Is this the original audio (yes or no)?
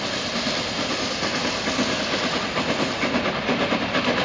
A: yes